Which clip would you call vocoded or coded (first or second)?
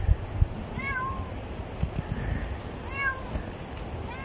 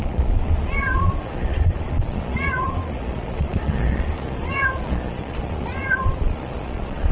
second